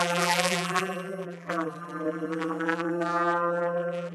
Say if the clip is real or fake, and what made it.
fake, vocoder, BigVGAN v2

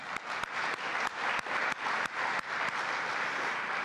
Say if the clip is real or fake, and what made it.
real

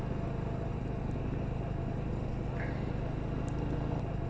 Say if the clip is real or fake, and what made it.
real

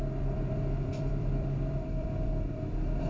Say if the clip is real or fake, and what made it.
fake, vocoder, BigVGAN v2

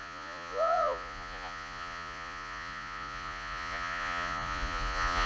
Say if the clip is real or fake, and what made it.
fake, vocoder, Vocos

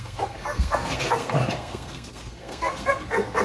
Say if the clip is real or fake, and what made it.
fake, codec, SNAC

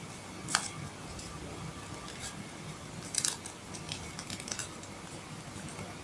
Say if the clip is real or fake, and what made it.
real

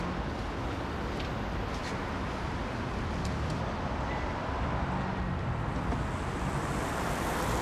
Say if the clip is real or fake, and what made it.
real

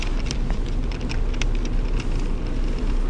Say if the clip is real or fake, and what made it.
real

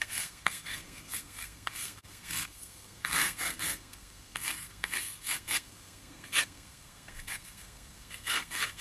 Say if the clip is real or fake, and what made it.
fake, codec, SNAC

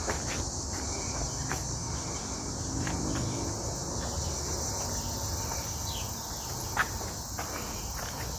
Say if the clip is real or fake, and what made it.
real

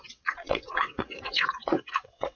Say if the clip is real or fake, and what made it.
fake, vocoder, WaveNeXt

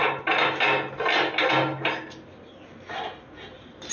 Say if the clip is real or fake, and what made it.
real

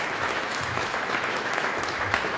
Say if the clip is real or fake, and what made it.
fake, autoencoder, DAC-VAE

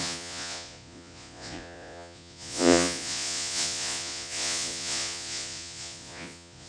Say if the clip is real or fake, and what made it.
fake, vocoder, Vocos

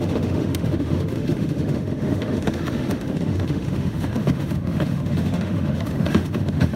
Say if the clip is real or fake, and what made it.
fake, autoencoder, DAC-VAE